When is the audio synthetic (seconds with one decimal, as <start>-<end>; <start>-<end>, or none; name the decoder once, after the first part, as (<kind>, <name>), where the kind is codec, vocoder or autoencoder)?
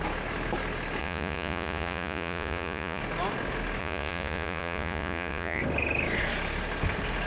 1.0-3.0 (vocoder, Vocos); 3.8-5.6